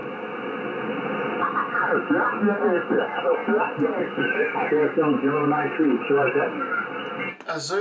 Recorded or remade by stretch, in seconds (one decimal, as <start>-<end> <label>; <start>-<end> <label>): 0.0-3.4 recorded; 3.4-6.9 remade; 6.9-7.8 recorded